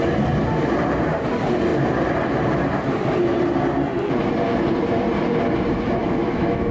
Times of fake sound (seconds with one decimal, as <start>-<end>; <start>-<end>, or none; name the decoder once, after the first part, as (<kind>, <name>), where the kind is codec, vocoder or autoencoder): 6.0-6.7 (autoencoder, DAC-VAE)